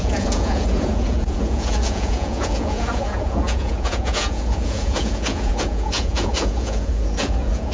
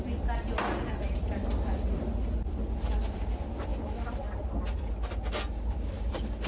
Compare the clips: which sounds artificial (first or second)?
first